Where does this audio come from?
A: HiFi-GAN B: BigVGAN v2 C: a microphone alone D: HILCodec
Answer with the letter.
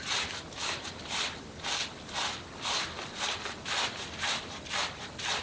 C